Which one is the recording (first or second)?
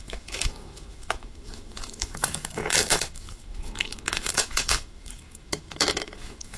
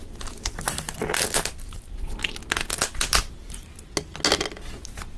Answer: second